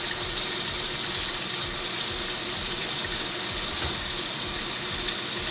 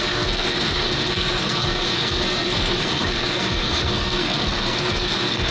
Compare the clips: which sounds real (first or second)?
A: first